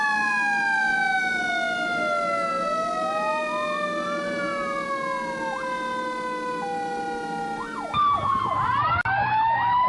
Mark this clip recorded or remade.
recorded